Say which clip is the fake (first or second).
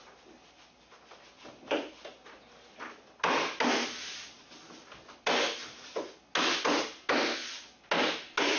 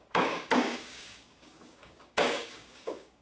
second